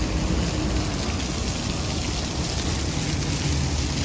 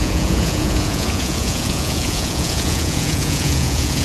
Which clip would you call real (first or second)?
first